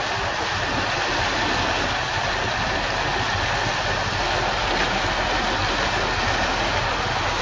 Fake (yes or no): no